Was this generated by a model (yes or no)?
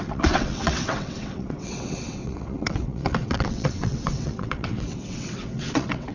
yes